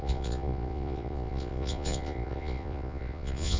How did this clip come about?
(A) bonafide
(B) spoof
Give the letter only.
B